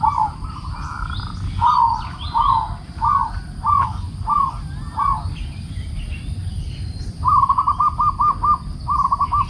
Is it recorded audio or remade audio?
recorded